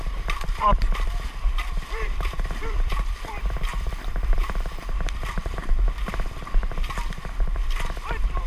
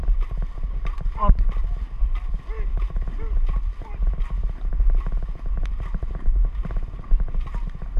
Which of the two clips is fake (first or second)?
first